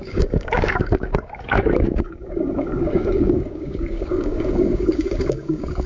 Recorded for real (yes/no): no